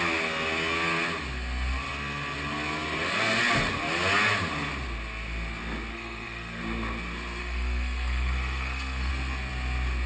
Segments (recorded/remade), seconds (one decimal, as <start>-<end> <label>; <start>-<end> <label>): 0.0-5.9 recorded; 5.9-6.6 remade; 6.6-7.4 recorded; 7.4-9.1 remade; 9.1-10.1 recorded